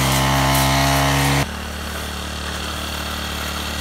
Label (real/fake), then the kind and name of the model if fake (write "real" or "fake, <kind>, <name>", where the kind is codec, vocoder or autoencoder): real